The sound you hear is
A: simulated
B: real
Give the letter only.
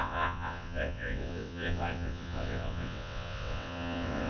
A